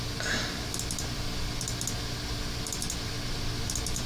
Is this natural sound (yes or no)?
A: yes